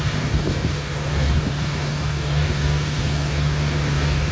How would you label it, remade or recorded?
remade